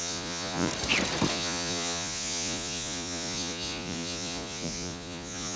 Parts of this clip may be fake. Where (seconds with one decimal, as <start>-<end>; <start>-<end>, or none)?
0.0-0.7; 1.3-5.6